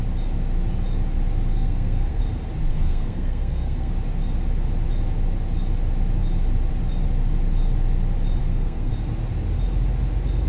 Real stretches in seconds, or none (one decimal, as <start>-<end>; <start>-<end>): 0.0-1.5; 2.2-2.7; 3.9-8.4; 8.9-10.5